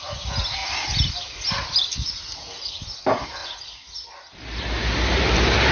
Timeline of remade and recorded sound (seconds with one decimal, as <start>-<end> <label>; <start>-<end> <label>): 0.0-0.6 recorded; 0.6-1.1 remade; 1.1-3.4 recorded; 3.4-4.6 remade; 4.6-5.7 recorded